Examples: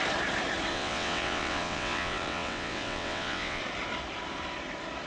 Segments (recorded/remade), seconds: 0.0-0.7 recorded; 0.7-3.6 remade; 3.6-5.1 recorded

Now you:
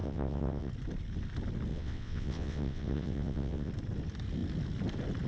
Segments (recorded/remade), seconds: 0.0-0.7 remade; 0.7-1.7 recorded; 1.7-3.7 remade; 3.7-5.3 recorded

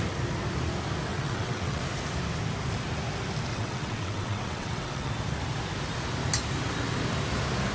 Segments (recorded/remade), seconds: 0.0-1.1 recorded; 1.1-1.8 remade; 1.8-3.5 recorded; 3.5-5.1 remade; 5.1-7.7 recorded

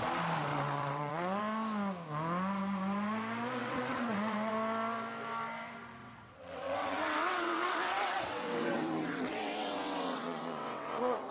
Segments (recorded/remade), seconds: 0.0-0.5 recorded; 0.5-1.4 remade; 1.4-3.6 recorded; 3.6-4.5 remade; 4.5-6.0 recorded; 6.0-11.3 remade

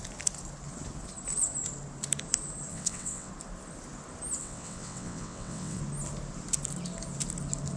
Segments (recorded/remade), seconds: 0.0-2.7 recorded; 2.7-3.3 remade; 3.3-4.4 recorded; 4.4-5.8 remade; 5.8-7.8 recorded

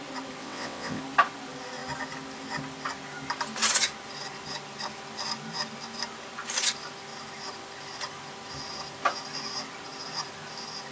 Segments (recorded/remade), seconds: 0.0-0.4 recorded; 0.4-1.0 remade; 1.0-10.9 recorded

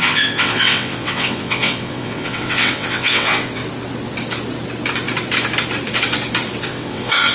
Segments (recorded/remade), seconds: 0.0-3.6 remade; 3.6-6.6 recorded; 6.6-7.3 remade

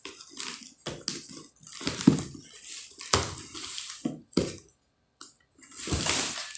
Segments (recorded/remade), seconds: 0.0-6.6 recorded